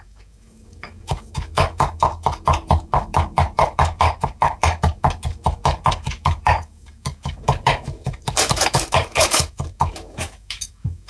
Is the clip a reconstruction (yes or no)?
yes